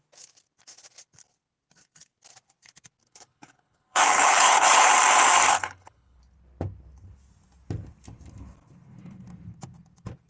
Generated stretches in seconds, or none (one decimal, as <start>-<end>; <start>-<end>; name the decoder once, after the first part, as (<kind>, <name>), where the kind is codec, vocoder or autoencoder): 3.0-4.9 (codec, HILCodec); 5.5-6.2